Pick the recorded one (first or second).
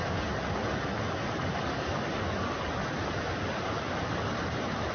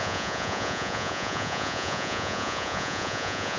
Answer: first